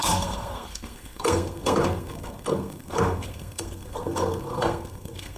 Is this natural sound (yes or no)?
no